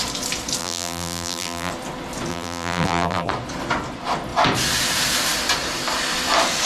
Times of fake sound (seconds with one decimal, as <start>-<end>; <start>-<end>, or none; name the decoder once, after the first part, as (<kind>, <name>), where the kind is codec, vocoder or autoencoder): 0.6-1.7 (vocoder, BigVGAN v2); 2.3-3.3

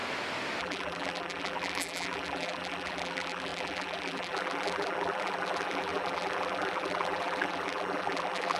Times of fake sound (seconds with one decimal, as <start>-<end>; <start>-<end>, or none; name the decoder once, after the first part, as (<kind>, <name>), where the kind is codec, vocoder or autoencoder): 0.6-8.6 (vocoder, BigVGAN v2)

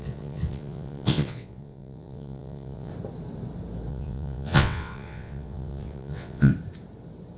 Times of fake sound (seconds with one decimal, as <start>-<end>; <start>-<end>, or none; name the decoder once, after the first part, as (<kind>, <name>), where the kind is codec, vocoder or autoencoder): 0.0-2.9 (vocoder, WaveNeXt); 3.9-6.5

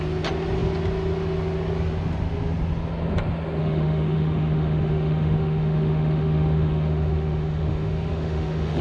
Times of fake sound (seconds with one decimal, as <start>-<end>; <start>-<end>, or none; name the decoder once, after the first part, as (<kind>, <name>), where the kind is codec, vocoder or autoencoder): 3.6-8.8 (autoencoder, DAC-VAE)

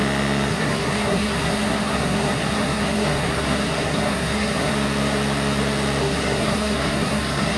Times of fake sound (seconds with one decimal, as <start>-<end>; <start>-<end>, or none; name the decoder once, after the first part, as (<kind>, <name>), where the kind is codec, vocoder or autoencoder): 0.5-4.7 (codec, SNAC); 6.0-7.6

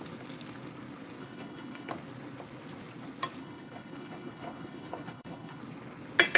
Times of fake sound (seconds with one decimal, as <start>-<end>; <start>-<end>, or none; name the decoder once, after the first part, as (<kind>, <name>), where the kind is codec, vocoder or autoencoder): 1.2-1.9 (codec, HILCodec); 3.4-5.6

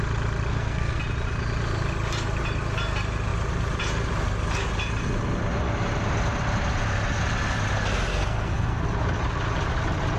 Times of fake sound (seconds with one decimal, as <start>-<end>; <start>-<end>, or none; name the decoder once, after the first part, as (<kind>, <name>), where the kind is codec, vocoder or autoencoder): 0.5-1.0 (codec, SNAC); 8.1-8.8